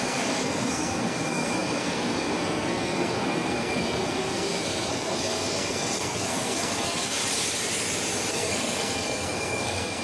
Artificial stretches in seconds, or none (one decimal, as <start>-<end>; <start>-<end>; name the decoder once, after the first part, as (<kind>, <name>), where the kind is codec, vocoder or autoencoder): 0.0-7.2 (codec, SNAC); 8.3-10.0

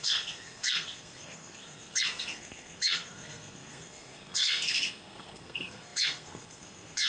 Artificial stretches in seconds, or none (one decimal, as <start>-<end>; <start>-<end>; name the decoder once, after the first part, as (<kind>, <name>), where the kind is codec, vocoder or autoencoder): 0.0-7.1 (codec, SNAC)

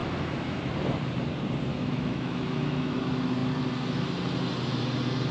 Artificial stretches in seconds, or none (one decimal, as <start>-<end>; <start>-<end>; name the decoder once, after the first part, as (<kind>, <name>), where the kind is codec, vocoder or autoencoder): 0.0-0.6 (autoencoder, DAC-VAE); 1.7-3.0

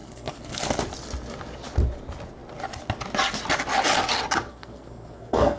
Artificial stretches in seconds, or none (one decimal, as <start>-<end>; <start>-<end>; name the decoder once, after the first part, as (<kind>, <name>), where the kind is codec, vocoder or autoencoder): 0.0-0.6 (codec, SNAC); 4.5-5.6

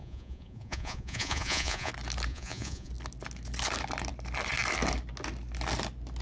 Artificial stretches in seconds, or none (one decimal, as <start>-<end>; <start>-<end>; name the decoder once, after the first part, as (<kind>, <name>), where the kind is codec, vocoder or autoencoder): 0.0-1.9 (vocoder, Vocos); 2.3-2.9